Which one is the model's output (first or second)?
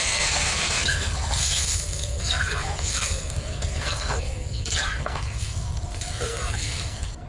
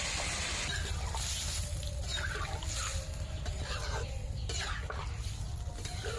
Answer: first